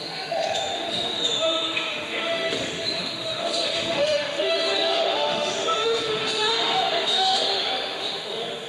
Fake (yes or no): yes